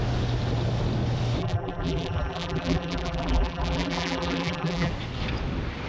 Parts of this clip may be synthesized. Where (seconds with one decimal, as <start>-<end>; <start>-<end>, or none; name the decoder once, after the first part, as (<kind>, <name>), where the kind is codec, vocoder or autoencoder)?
1.4-4.9 (vocoder, BigVGAN v2)

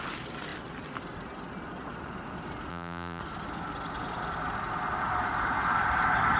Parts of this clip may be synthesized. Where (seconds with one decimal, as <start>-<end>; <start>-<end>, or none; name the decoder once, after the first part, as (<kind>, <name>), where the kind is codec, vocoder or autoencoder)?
2.7-3.2 (vocoder, BigVGAN v2)

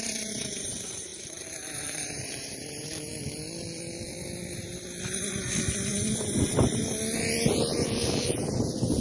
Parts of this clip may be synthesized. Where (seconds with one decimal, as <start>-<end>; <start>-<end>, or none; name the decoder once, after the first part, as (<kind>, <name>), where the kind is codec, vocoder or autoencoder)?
0.0-3.1 (vocoder, BigVGAN v2); 5.4-5.9

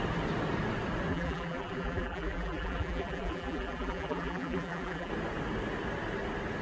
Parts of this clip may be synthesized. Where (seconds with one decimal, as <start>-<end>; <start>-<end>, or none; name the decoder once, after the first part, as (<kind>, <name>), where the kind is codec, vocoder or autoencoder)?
1.1-5.1 (vocoder, BigVGAN v2)